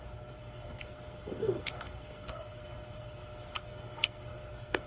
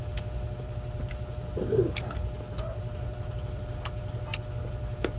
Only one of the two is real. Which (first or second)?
second